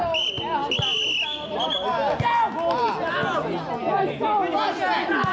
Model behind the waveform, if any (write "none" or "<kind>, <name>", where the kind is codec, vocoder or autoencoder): none